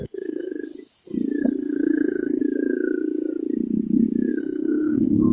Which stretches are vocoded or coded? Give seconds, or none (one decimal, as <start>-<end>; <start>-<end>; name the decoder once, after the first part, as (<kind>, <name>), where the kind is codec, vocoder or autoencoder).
0.0-0.5 (codec, SNAC); 1.4-2.4; 4.4-5.3